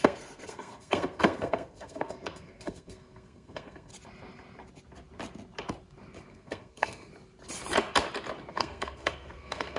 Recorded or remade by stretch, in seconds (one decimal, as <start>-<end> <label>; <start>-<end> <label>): 0.0-3.9 remade; 3.9-6.3 recorded; 6.3-7.1 remade; 7.1-8.5 recorded; 8.5-9.8 remade